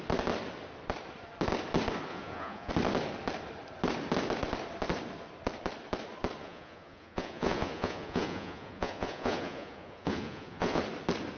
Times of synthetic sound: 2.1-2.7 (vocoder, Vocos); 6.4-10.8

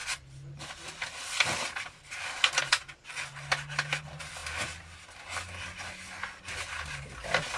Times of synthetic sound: 0.0-2.6 (vocoder, BigVGAN v2)

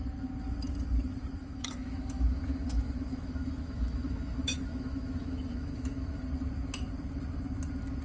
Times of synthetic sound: 1.4-6.2 (autoencoder, DAC-VAE)

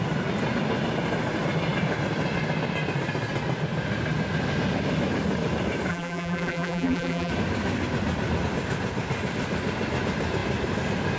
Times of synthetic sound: 5.9-7.3 (vocoder, BigVGAN v2)

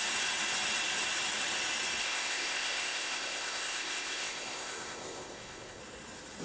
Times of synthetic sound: 2.0-5.8 (codec, ZipCodec)

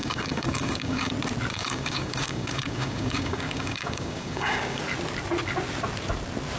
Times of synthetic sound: 0.0-1.1 (codec, DAC); 1.5-4.8

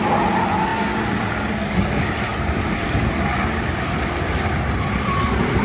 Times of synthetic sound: none

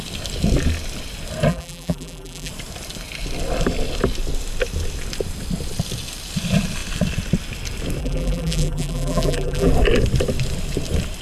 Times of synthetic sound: 1.5-2.5 (vocoder, BigVGAN v2); 8.0-9.7